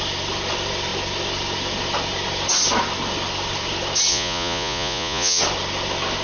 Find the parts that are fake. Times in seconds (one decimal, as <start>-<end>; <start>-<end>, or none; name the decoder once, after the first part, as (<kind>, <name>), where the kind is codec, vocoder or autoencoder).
4.1-5.4 (vocoder, Vocos)